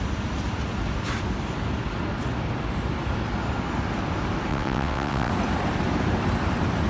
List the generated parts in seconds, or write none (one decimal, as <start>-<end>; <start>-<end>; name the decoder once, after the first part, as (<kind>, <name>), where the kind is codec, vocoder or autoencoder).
4.5-5.3 (vocoder, WaveNeXt)